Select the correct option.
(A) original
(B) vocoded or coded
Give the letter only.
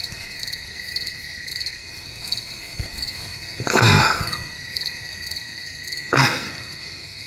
B